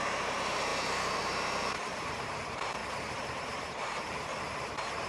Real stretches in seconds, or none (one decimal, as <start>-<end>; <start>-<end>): none